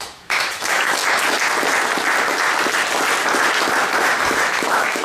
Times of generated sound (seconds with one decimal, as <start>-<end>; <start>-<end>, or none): 0.0-1.0; 4.0-5.0